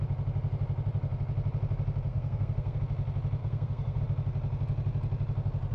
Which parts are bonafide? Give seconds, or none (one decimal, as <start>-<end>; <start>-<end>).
0.0-2.1; 2.8-3.4; 4.0-5.7